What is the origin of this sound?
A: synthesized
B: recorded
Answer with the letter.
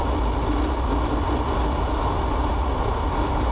B